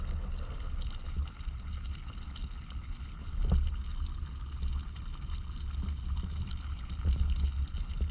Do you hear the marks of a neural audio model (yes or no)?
no